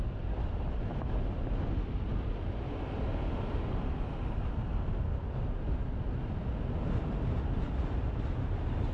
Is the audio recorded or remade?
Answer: recorded